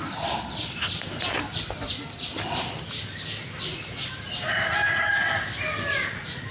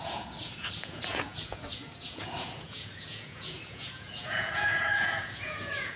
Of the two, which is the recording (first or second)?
first